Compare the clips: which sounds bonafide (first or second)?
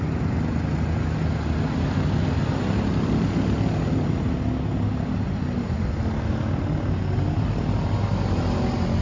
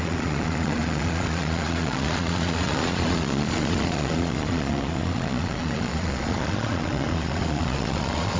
first